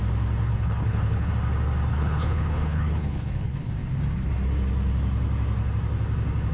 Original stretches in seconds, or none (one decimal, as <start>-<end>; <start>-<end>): 0.0-0.5; 1.3-1.9; 3.7-6.5